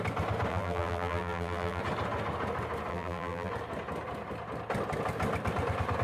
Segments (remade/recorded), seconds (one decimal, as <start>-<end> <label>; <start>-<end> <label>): 0.0-0.5 recorded; 0.5-1.8 remade; 1.8-2.9 recorded; 2.9-3.5 remade; 3.5-6.0 recorded